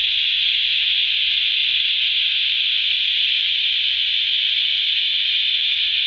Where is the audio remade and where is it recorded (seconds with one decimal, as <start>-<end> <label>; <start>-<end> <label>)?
0.0-6.1 recorded